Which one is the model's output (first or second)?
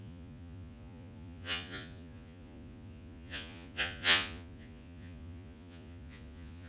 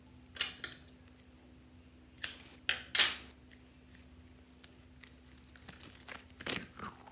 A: first